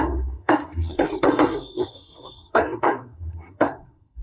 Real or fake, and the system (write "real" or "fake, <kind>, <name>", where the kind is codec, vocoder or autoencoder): fake, codec, SNAC